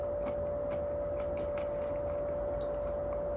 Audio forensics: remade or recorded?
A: recorded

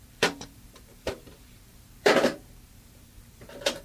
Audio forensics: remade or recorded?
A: remade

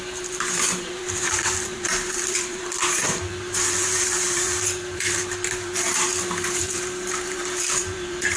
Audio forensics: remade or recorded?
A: remade